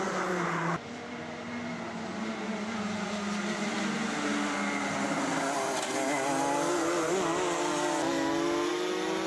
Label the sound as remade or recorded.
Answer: recorded